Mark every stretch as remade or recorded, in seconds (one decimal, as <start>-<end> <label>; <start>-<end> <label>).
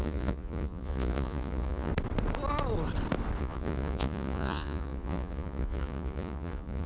0.0-1.9 remade; 1.9-3.4 recorded; 3.4-6.9 remade